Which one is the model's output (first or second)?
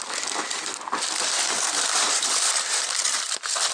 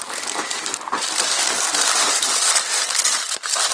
first